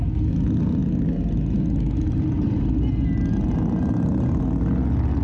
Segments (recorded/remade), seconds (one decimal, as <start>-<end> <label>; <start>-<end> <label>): 0.0-5.2 recorded